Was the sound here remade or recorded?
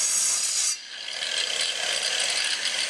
recorded